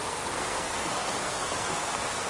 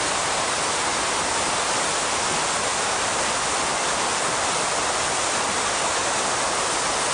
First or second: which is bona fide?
second